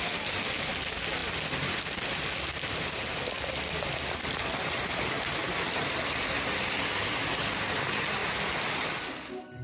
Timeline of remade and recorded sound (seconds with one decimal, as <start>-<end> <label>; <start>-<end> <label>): 0.0-9.6 recorded